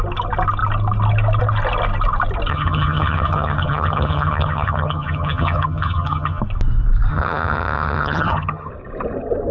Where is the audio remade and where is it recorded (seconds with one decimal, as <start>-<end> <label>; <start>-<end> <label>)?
0.0-2.5 recorded; 2.5-6.4 remade; 6.4-7.1 recorded; 7.1-8.7 remade; 8.7-9.5 recorded